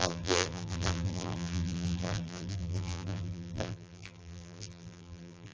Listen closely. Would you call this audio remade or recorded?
remade